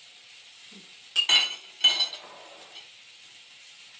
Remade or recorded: recorded